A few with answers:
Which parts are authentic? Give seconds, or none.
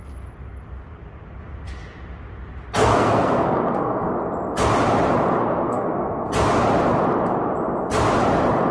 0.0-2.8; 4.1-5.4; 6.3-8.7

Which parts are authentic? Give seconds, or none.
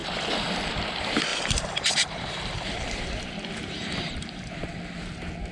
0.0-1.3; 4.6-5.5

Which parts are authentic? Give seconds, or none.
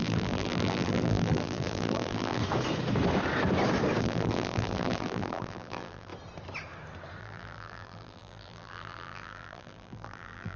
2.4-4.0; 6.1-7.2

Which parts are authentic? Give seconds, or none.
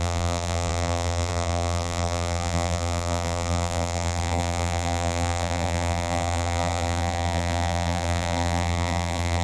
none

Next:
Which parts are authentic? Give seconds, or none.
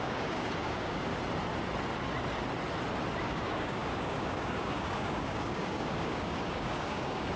1.1-3.2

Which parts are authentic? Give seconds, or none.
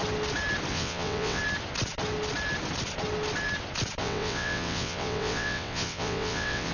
0.0-0.7; 1.4-4.0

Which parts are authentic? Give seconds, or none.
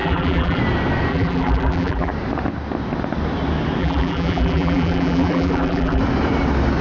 0.6-1.1; 2.1-3.8; 6.0-6.8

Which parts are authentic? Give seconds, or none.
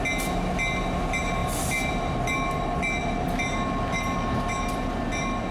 0.0-5.5